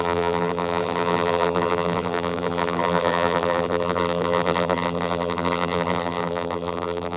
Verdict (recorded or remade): remade